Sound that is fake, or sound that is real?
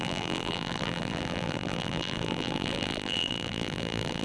fake